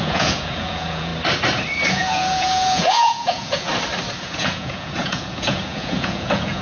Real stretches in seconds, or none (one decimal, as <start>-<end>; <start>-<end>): 1.1-1.9; 3.7-4.2